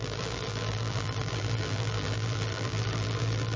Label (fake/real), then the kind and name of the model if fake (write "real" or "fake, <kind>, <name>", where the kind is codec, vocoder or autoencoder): fake, vocoder, BigVGAN v2